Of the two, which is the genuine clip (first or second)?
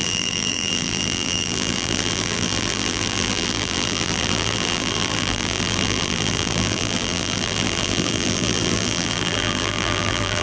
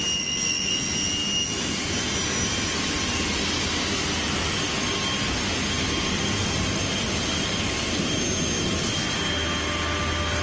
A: second